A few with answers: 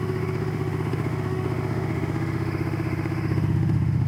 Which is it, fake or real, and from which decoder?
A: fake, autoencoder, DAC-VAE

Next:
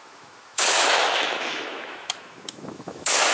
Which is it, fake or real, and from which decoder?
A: fake, autoencoder, DAC-VAE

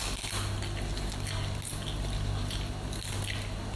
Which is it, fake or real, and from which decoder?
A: real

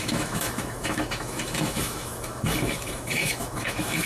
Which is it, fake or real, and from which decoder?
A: fake, autoencoder, DAC-VAE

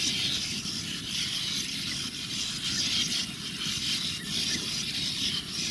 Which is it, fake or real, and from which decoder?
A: real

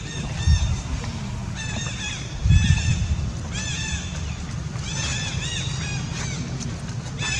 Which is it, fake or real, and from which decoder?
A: real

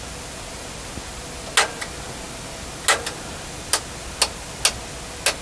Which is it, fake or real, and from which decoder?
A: real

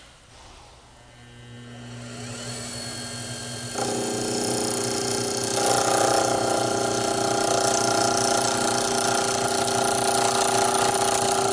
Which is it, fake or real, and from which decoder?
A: real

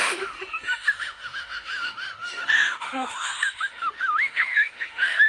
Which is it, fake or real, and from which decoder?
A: fake, autoencoder, DAC-VAE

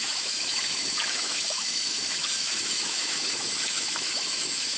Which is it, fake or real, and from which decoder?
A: fake, autoencoder, DAC-VAE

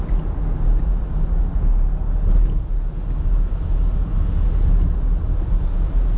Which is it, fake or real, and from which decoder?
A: real